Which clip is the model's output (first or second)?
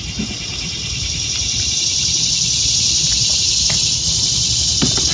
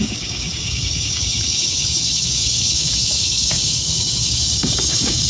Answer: second